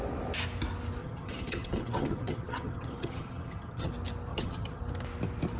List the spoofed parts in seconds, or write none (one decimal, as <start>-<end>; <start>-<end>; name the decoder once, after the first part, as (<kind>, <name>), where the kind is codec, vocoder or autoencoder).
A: 1.0-3.9 (vocoder, HiFi-GAN); 4.3-4.8